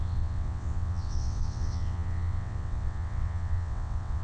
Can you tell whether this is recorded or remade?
remade